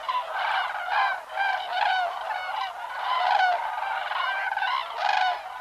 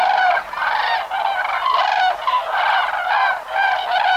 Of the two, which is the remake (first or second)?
second